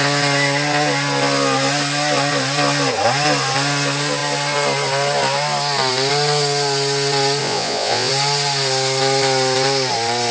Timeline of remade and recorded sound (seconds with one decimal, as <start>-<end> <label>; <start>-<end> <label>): 0.0-7.4 recorded; 7.4-8.1 remade; 8.1-10.3 recorded